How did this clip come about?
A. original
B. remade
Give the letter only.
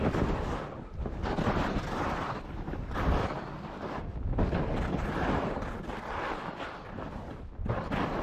A